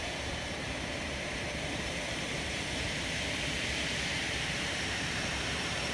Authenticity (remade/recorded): remade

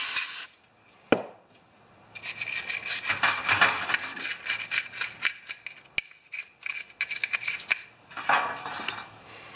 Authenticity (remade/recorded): recorded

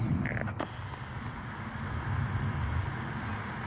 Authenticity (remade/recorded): recorded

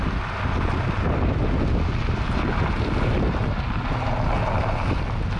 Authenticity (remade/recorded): recorded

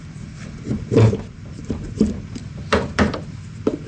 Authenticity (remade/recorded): remade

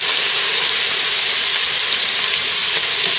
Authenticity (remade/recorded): remade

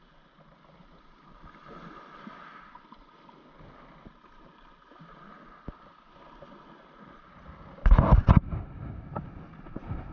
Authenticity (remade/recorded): recorded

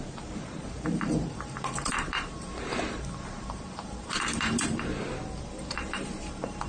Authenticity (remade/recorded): remade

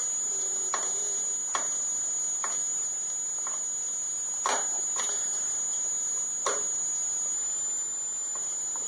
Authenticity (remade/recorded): recorded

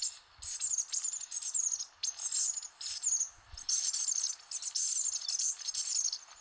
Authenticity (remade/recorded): recorded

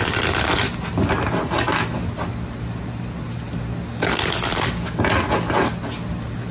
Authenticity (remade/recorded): recorded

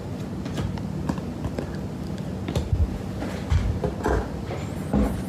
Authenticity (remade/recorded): recorded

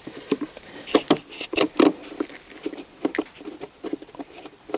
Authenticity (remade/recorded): remade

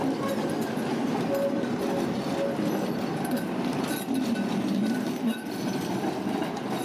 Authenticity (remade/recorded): recorded